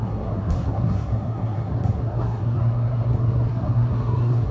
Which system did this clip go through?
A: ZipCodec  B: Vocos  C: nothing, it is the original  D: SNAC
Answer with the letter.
D